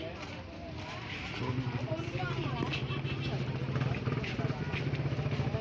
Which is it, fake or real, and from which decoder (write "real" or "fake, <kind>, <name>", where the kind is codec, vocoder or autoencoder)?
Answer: real